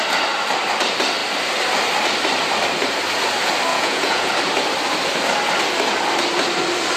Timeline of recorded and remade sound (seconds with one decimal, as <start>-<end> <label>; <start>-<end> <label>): 0.0-3.7 recorded; 3.7-4.3 remade; 4.3-7.0 recorded